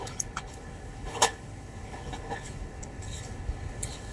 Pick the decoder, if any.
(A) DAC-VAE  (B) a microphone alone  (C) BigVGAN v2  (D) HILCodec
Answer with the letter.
D